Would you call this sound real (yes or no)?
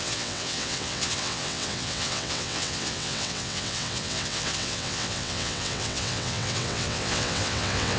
no